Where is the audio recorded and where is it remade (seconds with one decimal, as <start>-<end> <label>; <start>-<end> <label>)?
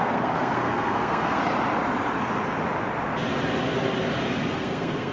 0.0-1.4 remade; 1.4-4.5 recorded; 4.5-5.1 remade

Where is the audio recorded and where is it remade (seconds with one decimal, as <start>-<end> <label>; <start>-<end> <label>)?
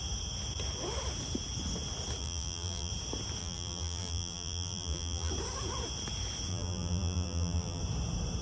0.0-2.2 recorded; 2.2-2.9 remade; 2.9-3.4 recorded; 3.4-5.3 remade; 5.3-6.5 recorded; 6.5-7.8 remade; 7.8-8.4 recorded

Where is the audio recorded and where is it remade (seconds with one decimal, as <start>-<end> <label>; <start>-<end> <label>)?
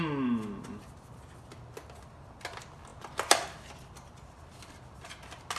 0.0-5.6 recorded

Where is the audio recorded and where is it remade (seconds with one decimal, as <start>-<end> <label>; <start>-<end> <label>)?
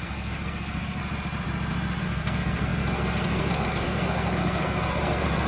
0.0-1.0 remade; 1.0-2.0 recorded; 2.0-5.5 remade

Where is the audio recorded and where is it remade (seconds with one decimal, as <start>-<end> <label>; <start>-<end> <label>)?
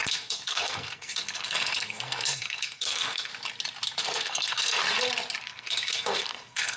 0.0-3.3 remade; 3.3-4.0 recorded; 4.0-4.8 remade; 4.8-5.4 recorded; 5.4-6.8 remade